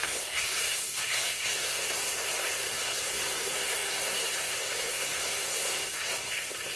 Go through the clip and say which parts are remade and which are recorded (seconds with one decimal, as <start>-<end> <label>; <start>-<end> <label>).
0.0-6.8 remade